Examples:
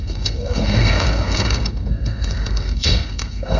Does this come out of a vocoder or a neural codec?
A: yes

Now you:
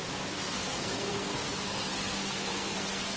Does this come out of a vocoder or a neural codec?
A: yes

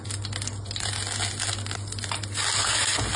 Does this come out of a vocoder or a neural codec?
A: no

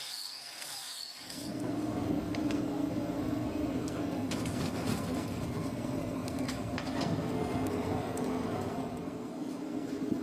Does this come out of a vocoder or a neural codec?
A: yes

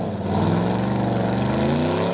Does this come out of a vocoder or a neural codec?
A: no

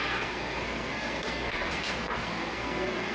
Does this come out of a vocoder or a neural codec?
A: yes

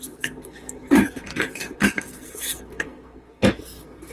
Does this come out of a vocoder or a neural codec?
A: yes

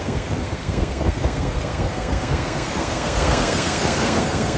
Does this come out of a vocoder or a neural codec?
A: yes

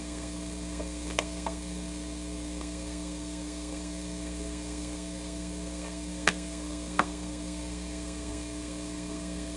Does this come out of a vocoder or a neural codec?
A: yes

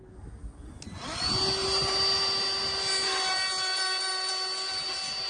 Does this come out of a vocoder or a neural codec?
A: no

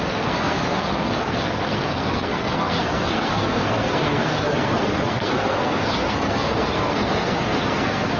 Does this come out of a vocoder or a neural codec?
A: yes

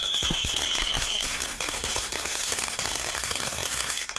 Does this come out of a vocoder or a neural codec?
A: yes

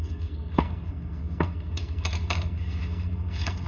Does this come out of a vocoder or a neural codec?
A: yes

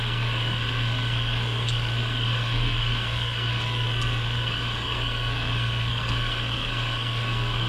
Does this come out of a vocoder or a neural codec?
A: yes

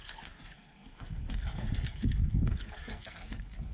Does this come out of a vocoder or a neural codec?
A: yes